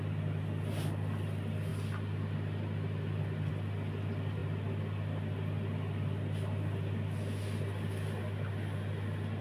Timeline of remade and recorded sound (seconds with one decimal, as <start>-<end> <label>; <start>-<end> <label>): 0.0-9.4 recorded